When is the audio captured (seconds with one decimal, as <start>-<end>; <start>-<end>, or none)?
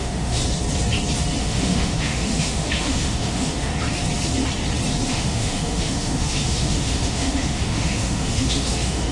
0.4-1.4; 3.7-5.1